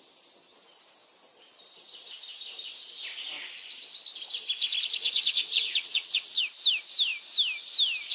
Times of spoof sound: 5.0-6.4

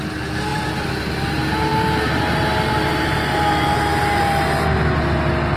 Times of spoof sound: none

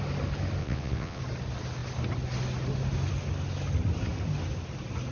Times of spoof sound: 0.6-1.2

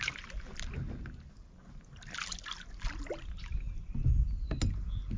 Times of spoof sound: none

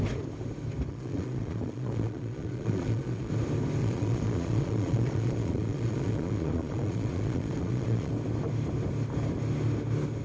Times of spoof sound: 0.9-3.3; 3.8-8.1